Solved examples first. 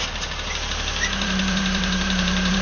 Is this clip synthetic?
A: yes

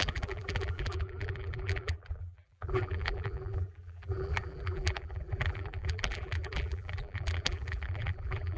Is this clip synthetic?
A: yes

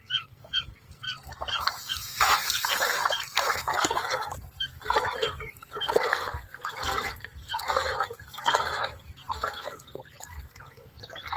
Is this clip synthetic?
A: yes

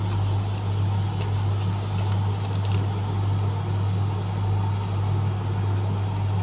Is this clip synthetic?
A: no